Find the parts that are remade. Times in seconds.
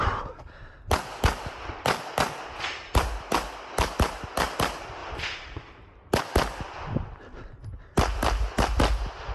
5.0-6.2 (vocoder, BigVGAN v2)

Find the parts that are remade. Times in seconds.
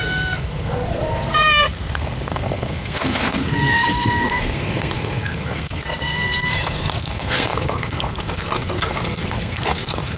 0.0-10.2 (codec, SNAC)